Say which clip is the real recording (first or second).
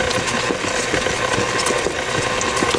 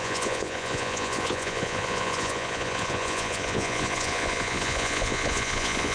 first